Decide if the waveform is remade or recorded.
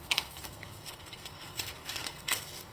remade